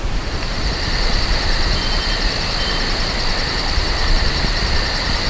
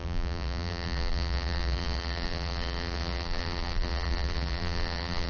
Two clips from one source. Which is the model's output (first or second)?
second